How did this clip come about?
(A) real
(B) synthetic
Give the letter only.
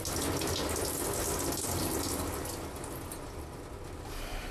A